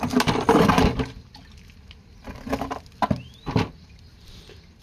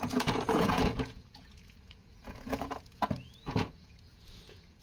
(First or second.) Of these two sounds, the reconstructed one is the second